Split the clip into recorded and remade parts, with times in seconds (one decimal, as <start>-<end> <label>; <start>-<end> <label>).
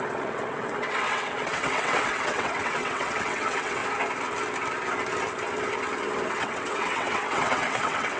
0.0-3.8 remade; 3.8-6.3 recorded; 6.3-8.2 remade